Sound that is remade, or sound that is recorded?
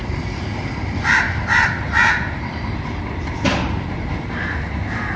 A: remade